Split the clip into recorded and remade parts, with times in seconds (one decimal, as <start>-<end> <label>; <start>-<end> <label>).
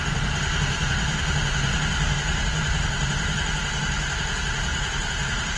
0.0-4.7 recorded; 4.7-5.6 remade